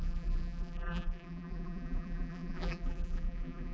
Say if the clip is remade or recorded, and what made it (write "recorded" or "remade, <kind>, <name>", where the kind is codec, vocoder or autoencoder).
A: remade, vocoder, BigVGAN v2